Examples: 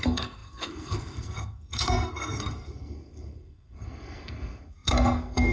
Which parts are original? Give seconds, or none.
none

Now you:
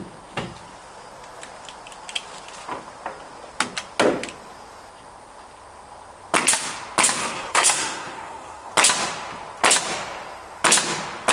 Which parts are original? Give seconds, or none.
0.0-7.2; 8.7-11.3

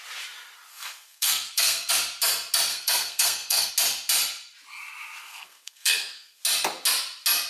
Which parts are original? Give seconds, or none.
0.0-0.7; 1.9-2.7; 3.7-5.2; 6.4-7.5

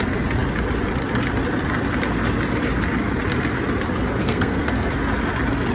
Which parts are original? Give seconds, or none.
0.0-4.2; 4.9-5.7